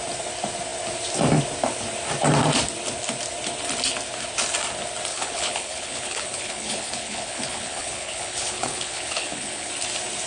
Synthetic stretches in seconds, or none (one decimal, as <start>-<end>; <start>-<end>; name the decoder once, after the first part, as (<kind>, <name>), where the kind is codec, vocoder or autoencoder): 5.1-9.7 (codec, HILCodec)